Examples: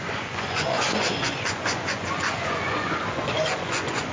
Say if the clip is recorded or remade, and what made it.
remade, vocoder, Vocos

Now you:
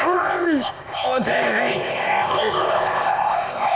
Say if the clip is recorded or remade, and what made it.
remade, codec, ZipCodec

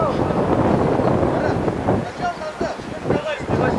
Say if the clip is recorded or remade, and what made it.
recorded